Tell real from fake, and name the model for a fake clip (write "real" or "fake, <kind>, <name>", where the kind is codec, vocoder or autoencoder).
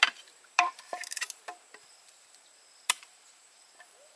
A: fake, vocoder, BigVGAN v2